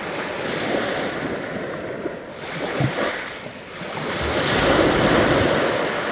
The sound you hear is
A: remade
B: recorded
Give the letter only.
B